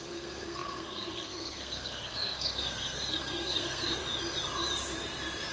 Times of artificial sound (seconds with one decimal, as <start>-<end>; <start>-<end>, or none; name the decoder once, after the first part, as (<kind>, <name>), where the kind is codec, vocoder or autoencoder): 0.0-4.0 (codec, SNAC)